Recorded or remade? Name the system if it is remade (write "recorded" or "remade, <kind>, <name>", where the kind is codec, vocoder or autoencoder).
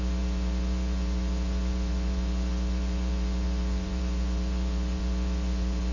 remade, vocoder, Vocos